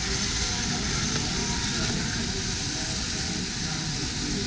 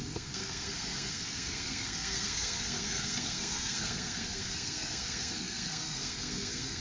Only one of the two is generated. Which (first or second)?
second